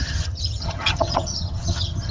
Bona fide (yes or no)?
no